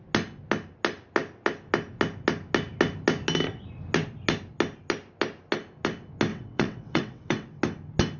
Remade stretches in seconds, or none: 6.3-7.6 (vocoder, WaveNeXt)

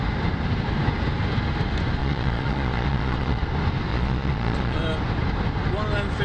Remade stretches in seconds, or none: 2.0-3.4 (vocoder, Vocos); 3.9-4.8